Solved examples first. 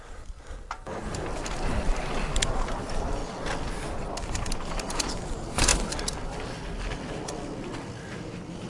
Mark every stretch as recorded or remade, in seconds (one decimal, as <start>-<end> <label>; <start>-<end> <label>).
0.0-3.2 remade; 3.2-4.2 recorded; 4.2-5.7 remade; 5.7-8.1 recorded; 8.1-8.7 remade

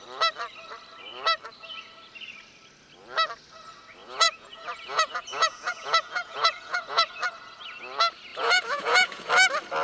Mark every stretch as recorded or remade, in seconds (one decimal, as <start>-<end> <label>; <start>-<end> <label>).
0.0-4.0 recorded; 4.0-7.2 remade; 7.2-8.3 recorded; 8.3-9.3 remade; 9.3-9.8 recorded

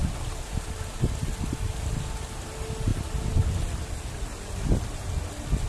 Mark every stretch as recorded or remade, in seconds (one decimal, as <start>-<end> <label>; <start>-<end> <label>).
0.0-5.7 recorded

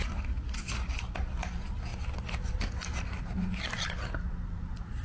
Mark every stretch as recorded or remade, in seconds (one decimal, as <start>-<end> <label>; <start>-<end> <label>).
0.0-5.0 recorded